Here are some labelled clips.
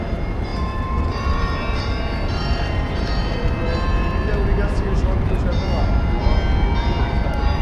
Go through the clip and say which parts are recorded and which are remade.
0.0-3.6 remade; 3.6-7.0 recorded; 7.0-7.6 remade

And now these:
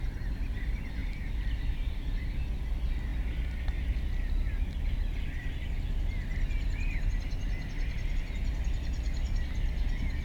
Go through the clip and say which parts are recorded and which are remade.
0.0-1.0 recorded; 1.0-2.6 remade; 2.6-10.2 recorded

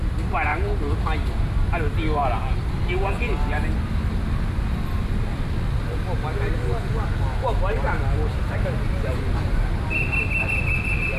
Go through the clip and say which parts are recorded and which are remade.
0.0-0.5 recorded; 0.5-1.0 remade; 1.0-11.2 recorded